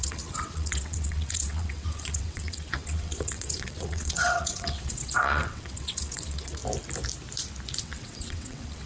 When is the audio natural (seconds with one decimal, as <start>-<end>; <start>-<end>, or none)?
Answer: 6.6-7.8